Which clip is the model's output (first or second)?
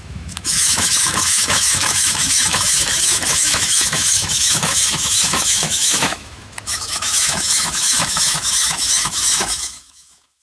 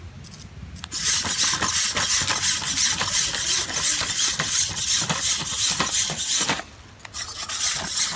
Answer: first